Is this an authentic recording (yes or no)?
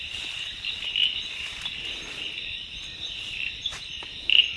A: yes